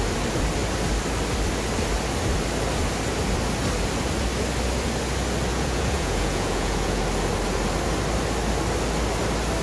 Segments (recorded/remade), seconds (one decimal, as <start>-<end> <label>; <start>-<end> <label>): 0.0-5.5 recorded; 5.5-7.0 remade; 7.0-9.6 recorded